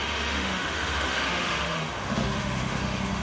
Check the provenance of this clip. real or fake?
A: fake